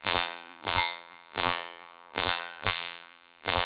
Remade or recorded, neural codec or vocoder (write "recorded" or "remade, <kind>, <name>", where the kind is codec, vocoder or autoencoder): remade, vocoder, BigVGAN v2